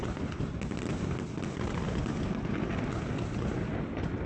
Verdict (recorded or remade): recorded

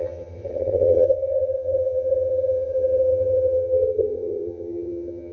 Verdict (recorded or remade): remade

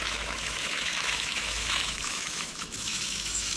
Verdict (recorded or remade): remade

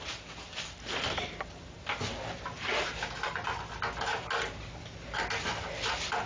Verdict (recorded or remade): recorded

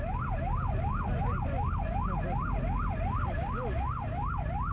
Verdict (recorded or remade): recorded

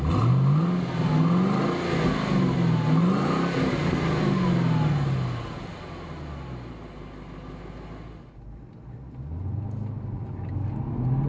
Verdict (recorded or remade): recorded